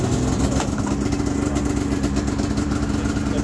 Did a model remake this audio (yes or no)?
no